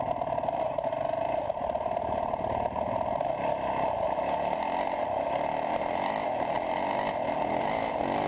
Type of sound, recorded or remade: recorded